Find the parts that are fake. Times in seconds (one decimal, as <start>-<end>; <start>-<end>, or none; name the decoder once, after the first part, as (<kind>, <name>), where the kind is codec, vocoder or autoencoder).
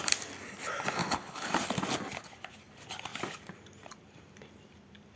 1.0-1.5 (codec, HILCodec)